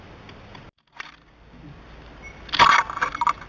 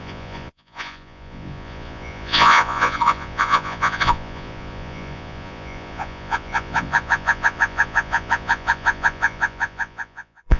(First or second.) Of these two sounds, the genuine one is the first